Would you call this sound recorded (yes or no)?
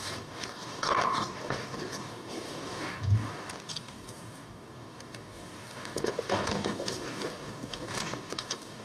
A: no